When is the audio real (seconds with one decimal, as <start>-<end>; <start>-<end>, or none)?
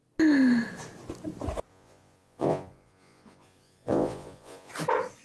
0.0-1.7; 4.7-5.2